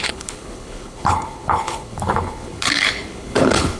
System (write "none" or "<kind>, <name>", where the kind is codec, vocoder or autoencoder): codec, HILCodec